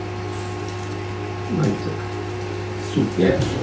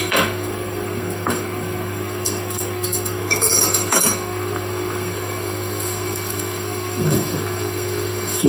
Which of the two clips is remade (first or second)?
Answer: second